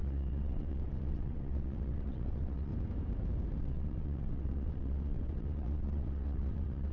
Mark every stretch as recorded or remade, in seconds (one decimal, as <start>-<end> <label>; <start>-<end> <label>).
0.0-2.7 remade; 2.7-3.6 recorded; 3.6-6.9 remade